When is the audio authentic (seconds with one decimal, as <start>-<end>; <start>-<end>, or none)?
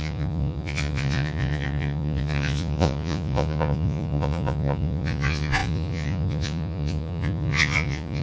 none